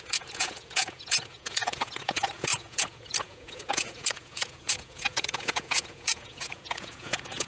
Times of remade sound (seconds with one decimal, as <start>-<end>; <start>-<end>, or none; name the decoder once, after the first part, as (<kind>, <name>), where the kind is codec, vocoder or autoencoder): 0.0-7.5 (vocoder, Vocos)

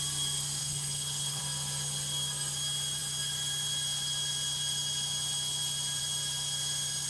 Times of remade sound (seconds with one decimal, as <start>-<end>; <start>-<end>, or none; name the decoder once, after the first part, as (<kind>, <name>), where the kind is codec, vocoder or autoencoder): 0.6-1.4 (codec, HILCodec)

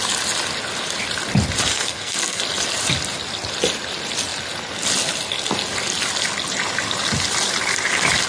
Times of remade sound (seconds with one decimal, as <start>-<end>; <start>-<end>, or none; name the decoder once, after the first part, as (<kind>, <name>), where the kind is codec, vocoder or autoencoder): 1.7-2.4 (codec, SNAC)